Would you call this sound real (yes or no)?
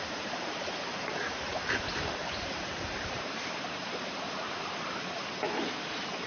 no